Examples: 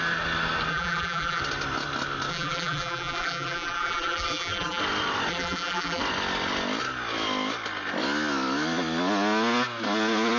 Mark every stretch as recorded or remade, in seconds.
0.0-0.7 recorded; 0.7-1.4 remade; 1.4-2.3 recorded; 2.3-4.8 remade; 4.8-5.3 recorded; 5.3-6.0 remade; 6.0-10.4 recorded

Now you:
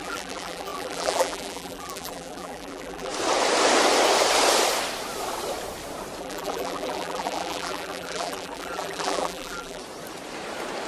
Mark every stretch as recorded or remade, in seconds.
0.0-3.1 remade; 3.1-6.2 recorded; 6.2-9.8 remade; 9.8-10.9 recorded

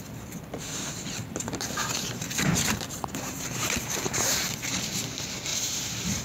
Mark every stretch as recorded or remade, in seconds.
0.0-1.2 recorded; 1.2-4.4 remade; 4.4-5.5 recorded; 5.5-6.2 remade

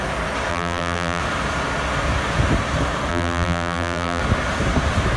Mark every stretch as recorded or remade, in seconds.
0.0-0.5 recorded; 0.5-1.2 remade; 1.2-3.1 recorded; 3.1-4.2 remade; 4.2-5.2 recorded

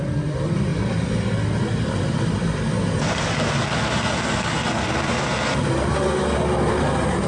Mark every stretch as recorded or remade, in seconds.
0.0-7.3 recorded

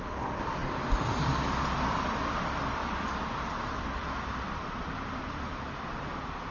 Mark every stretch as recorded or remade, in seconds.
0.0-0.6 recorded; 0.6-3.2 remade; 3.2-4.0 recorded; 4.0-5.5 remade; 5.5-6.5 recorded

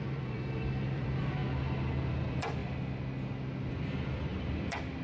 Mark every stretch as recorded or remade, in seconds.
0.0-1.4 remade; 1.4-2.1 recorded; 2.1-2.6 remade; 2.6-3.7 recorded; 3.7-5.0 remade